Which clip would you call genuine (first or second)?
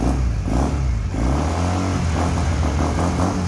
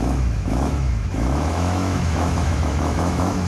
first